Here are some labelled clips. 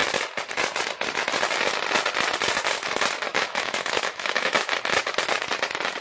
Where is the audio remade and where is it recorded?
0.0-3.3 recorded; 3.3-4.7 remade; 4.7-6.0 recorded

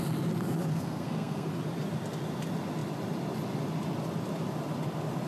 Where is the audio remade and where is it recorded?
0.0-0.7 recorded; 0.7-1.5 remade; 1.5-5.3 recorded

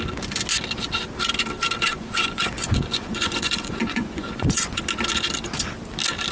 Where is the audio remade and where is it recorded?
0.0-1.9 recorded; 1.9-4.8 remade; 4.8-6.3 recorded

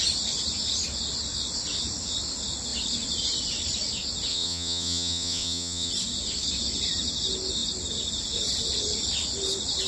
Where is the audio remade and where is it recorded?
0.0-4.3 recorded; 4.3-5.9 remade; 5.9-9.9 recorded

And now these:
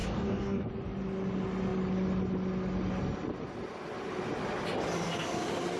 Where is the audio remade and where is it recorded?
0.0-0.7 remade; 0.7-5.8 recorded

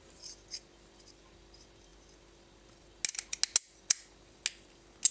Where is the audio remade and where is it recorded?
0.0-5.1 recorded

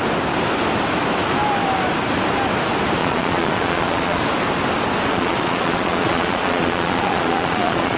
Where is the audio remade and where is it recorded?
0.0-3.0 recorded; 3.0-4.2 remade; 4.2-5.1 recorded; 5.1-8.0 remade

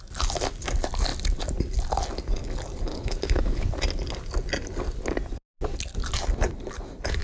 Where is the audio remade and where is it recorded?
0.0-2.9 recorded; 2.9-3.7 remade; 3.7-7.2 recorded